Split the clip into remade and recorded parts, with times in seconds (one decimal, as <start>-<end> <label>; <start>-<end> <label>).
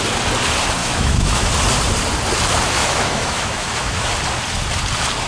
0.0-0.8 recorded; 0.8-1.5 remade; 1.5-2.8 recorded; 2.8-4.1 remade; 4.1-5.3 recorded